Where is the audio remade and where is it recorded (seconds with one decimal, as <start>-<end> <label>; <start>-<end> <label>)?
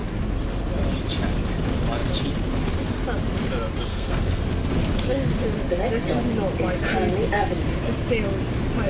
0.0-3.9 recorded; 3.9-4.4 remade; 4.4-8.9 recorded